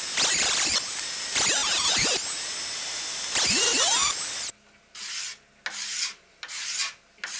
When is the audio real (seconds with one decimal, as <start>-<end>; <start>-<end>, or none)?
0.0-7.4